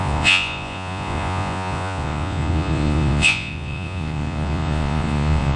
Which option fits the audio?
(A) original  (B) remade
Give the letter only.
B